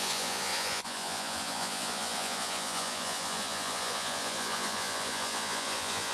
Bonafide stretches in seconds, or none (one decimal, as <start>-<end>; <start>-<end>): none